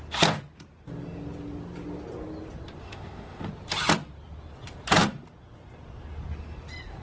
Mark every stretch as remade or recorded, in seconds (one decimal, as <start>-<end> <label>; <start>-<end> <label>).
0.0-2.8 recorded; 2.8-3.5 remade; 3.5-7.0 recorded